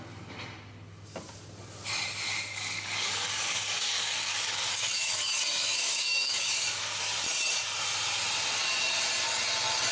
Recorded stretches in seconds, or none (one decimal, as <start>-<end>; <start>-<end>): 0.0-2.5; 7.0-9.9